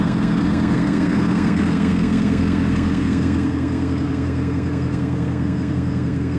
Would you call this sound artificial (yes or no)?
yes